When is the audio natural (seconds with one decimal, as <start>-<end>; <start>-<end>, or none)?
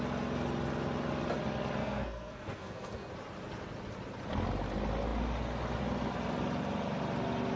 0.0-1.8; 3.1-7.6